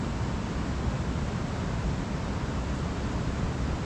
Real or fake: real